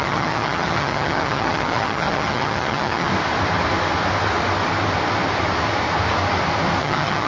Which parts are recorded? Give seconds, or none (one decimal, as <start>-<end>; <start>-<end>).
3.1-6.8